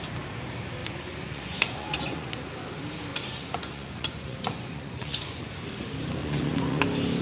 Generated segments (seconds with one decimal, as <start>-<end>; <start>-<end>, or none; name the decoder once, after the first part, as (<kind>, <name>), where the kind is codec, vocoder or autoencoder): 0.8-2.5 (vocoder, Vocos); 3.1-5.5; 6.2-6.8